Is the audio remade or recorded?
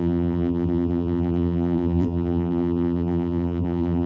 remade